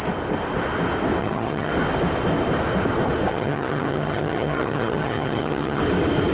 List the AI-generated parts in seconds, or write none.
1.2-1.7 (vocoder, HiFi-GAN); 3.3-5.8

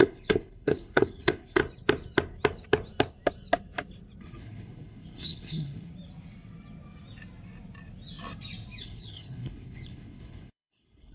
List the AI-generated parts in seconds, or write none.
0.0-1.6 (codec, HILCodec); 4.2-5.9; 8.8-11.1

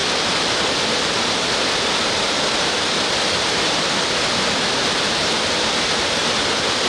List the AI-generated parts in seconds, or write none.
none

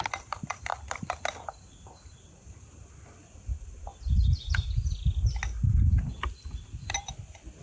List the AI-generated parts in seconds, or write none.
0.0-3.9 (vocoder, BigVGAN v2); 7.1-7.6

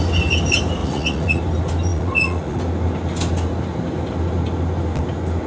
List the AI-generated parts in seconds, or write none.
0.8-1.4 (vocoder, Vocos); 1.9-2.6